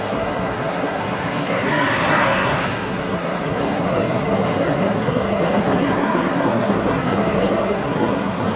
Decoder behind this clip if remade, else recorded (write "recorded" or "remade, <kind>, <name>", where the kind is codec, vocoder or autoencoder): remade, codec, SNAC